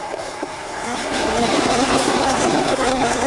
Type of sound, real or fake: fake